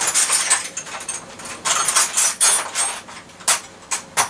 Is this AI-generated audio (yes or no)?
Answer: no